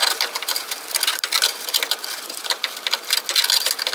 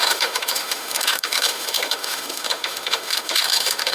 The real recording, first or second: first